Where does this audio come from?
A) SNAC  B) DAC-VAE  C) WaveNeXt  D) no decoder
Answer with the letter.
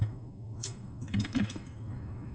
B